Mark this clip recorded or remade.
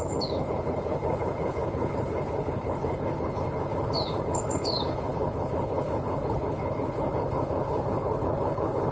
remade